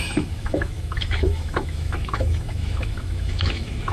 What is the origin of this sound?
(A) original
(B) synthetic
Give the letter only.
B